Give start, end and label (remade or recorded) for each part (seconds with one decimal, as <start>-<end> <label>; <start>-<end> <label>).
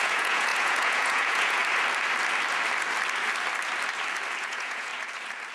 0.0-1.6 remade; 1.6-4.4 recorded; 4.4-4.9 remade; 4.9-5.5 recorded